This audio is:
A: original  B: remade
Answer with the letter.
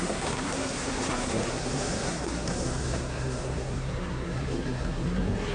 B